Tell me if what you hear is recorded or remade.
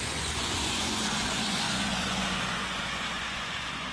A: remade